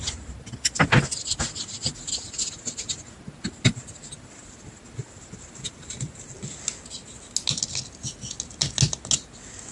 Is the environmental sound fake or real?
real